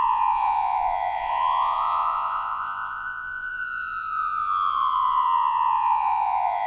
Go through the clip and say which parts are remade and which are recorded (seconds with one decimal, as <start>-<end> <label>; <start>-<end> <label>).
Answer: 0.0-6.7 remade